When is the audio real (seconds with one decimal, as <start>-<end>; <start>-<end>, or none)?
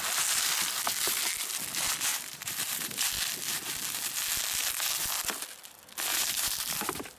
0.0-2.1; 3.1-6.1